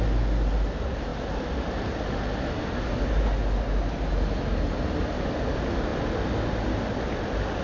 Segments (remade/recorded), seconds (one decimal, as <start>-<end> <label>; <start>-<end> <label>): 0.0-7.6 recorded